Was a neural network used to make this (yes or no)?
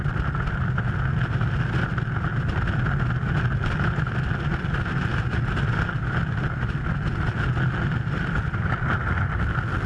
no